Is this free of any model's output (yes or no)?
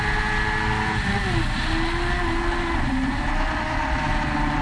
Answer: yes